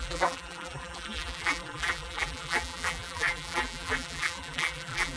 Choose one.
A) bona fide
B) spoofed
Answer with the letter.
B